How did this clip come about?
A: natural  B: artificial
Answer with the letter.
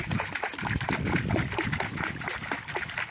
A